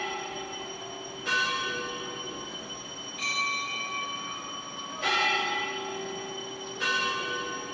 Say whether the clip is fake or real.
real